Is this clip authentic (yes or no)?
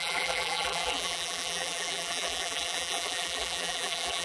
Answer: no